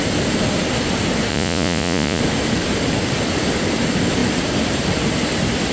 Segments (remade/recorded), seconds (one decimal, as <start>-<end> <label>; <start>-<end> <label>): 0.0-1.3 recorded; 1.3-2.2 remade; 2.2-5.7 recorded

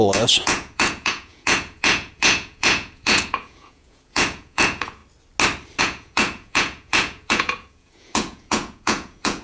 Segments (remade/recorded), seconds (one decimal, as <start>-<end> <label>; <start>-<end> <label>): 0.0-5.0 remade; 5.0-5.8 recorded; 5.8-9.4 remade

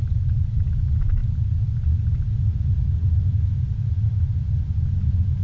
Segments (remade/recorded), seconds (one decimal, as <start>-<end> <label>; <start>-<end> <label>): 0.0-5.4 recorded